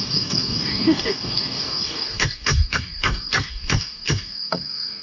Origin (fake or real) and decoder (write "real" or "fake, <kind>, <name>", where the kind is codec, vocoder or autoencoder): fake, codec, DAC